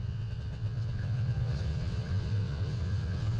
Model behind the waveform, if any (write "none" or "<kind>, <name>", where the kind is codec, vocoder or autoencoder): vocoder, WaveNeXt